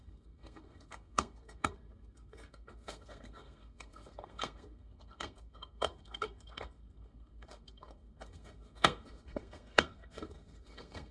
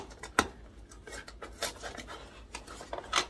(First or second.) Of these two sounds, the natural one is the second